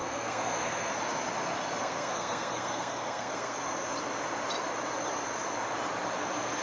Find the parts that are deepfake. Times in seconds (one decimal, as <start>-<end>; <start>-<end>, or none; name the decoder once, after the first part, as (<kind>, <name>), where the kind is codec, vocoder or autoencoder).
0.0-0.9 (codec, SNAC); 1.8-3.6